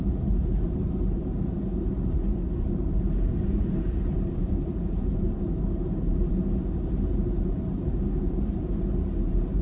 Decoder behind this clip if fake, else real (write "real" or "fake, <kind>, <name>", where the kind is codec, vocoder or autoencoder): fake, vocoder, BigVGAN v2